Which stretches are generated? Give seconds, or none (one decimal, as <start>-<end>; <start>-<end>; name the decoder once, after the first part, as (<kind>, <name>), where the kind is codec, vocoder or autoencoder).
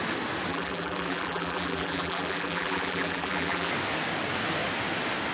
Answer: 0.5-3.7 (vocoder, BigVGAN v2)